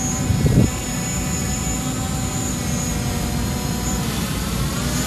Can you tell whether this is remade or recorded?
recorded